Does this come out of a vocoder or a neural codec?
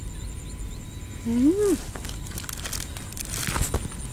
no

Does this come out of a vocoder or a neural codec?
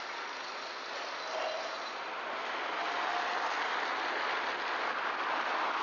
no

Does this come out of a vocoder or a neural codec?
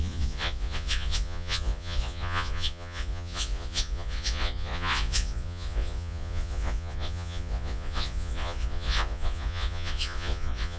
yes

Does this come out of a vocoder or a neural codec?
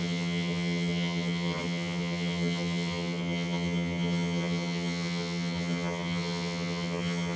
yes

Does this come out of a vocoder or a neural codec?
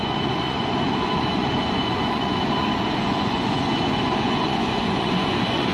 yes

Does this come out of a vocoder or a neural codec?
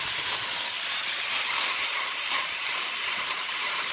yes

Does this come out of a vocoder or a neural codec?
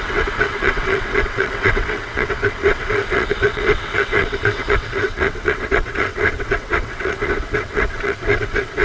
yes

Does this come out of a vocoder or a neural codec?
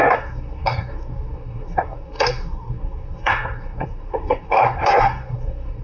yes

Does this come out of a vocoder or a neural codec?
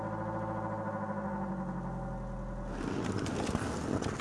no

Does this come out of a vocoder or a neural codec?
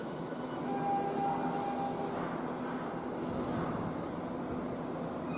no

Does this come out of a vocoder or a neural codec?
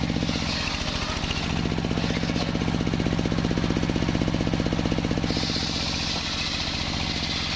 no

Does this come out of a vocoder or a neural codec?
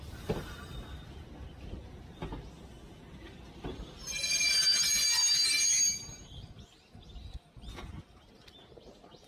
no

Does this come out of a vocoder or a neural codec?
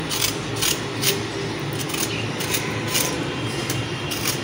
no